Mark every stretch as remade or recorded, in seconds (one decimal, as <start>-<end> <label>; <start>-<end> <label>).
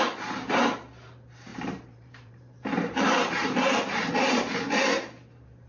0.0-1.5 recorded; 1.5-4.6 remade; 4.6-5.7 recorded